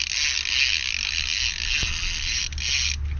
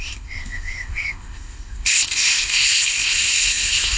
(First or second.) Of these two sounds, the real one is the first